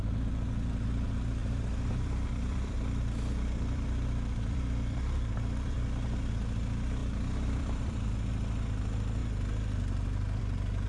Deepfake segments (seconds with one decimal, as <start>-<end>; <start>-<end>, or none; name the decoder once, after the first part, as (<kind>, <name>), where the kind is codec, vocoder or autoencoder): 1.4-6.3 (vocoder, BigVGAN v2); 7.0-8.1